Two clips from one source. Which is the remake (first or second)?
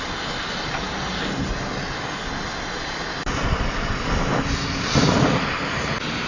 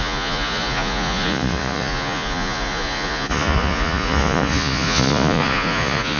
second